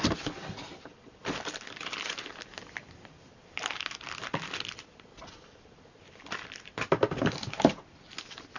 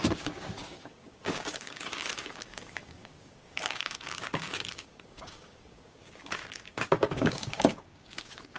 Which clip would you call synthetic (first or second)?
second